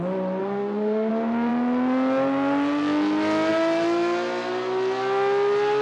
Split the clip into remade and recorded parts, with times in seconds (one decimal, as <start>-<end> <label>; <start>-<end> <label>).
0.0-0.4 recorded; 0.4-1.1 remade; 1.1-5.8 recorded